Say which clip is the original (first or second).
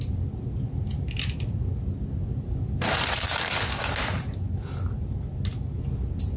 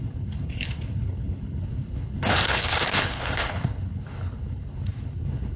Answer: first